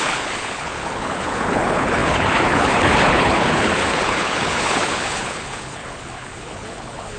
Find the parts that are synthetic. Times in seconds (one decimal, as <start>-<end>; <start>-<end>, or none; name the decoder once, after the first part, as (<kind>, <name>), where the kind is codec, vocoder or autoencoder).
0.0-7.2 (codec, HILCodec)